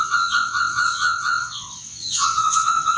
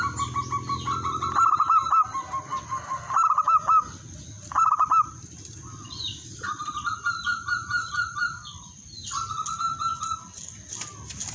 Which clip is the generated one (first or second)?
first